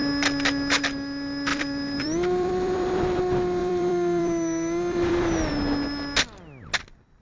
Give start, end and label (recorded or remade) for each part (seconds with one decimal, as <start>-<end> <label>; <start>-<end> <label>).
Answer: 0.0-1.5 recorded; 1.5-3.2 remade; 3.2-3.6 recorded; 3.6-5.5 remade; 5.5-7.2 recorded